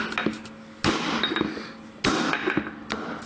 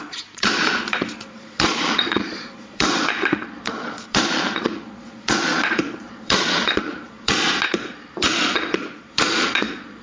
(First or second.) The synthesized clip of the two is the second